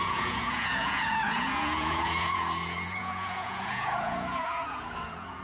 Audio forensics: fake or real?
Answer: fake